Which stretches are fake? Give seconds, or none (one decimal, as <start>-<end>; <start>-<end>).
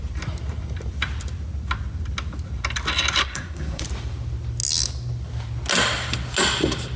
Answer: 3.2-3.8